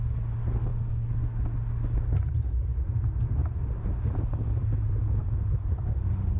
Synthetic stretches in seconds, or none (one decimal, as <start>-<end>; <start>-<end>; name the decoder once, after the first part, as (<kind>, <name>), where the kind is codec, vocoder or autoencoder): none